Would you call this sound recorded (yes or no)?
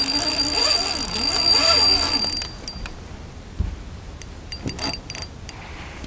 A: yes